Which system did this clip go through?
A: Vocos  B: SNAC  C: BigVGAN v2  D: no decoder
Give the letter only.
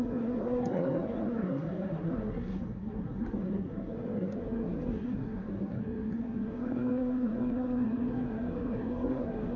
B